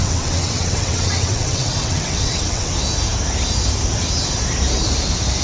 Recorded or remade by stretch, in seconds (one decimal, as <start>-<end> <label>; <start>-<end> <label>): 0.0-2.7 remade; 2.7-5.4 recorded